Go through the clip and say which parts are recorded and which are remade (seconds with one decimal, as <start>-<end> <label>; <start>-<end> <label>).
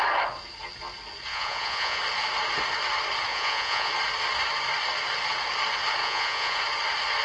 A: 0.0-1.3 recorded; 1.3-2.0 remade; 2.0-3.3 recorded; 3.3-3.9 remade; 3.9-6.0 recorded; 6.0-6.6 remade; 6.6-7.2 recorded